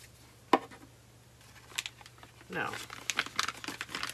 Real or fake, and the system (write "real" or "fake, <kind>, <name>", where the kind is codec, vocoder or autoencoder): real